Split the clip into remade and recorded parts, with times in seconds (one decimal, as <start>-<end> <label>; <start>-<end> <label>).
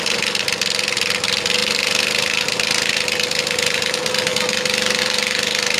0.0-5.8 recorded